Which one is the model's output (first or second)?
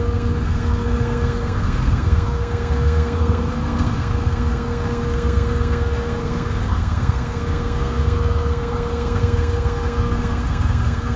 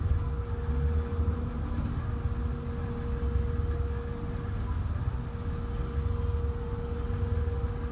first